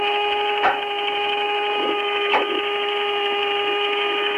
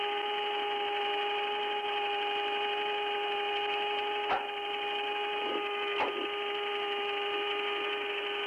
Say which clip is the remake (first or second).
first